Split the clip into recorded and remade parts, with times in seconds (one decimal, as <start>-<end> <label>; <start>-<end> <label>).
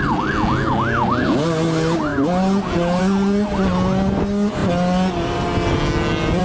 0.0-6.4 recorded